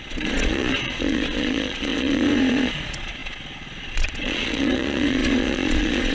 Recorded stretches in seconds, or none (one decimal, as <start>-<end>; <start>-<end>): none